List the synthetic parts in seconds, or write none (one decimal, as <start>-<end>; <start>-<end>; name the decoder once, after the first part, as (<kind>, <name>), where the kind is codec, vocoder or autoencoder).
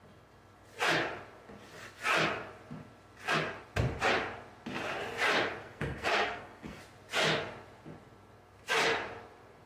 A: 5.6-6.8 (codec, SNAC)